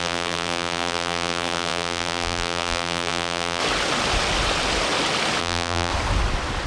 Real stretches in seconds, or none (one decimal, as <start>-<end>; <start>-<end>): 3.6-5.4; 5.9-6.7